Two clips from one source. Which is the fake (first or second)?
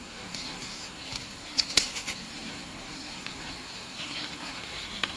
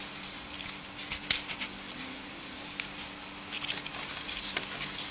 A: first